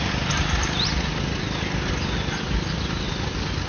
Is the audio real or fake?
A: real